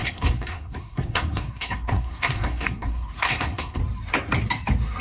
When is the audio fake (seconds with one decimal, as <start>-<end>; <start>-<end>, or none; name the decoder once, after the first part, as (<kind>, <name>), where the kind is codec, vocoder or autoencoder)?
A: 0.0-3.8 (codec, SNAC)